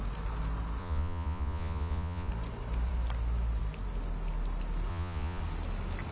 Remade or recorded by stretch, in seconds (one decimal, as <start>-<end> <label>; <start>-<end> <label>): 0.0-0.8 recorded; 0.8-2.3 remade; 2.3-4.9 recorded; 4.9-5.4 remade; 5.4-6.1 recorded